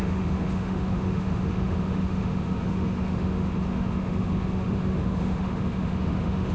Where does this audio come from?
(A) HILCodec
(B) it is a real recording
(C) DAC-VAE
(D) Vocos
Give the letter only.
C